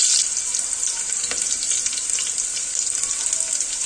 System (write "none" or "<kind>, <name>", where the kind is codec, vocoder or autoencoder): none